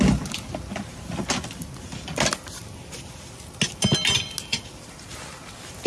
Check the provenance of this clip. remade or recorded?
recorded